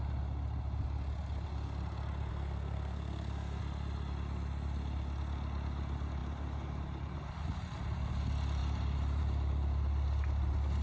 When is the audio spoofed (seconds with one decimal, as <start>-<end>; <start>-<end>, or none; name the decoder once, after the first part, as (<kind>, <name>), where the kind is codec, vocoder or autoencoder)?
2.3-3.6 (codec, SNAC)